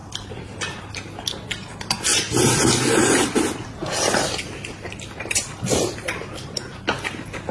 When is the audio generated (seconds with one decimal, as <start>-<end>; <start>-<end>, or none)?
0.0-0.9; 3.8-6.6